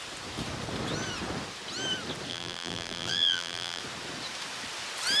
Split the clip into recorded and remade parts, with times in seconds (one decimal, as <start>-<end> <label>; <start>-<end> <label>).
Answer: 0.0-2.3 recorded; 2.3-3.8 remade; 3.8-5.2 recorded